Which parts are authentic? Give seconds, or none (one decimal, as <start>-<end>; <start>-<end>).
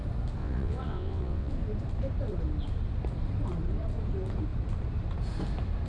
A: 0.0-0.4; 1.5-5.9